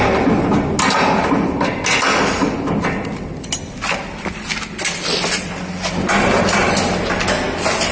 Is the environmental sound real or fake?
real